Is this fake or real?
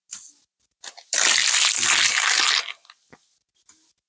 real